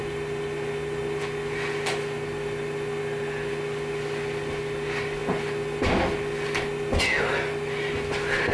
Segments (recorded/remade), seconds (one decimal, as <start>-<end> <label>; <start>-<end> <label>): 0.0-8.5 recorded